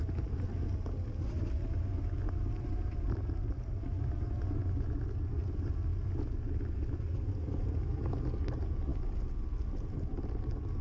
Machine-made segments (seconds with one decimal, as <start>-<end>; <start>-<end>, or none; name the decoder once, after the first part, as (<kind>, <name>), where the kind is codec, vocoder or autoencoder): none